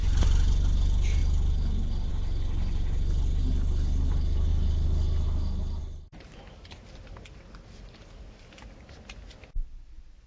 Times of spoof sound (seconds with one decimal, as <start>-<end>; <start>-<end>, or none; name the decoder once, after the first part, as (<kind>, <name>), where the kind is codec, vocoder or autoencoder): none